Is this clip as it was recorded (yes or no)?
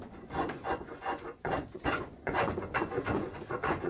no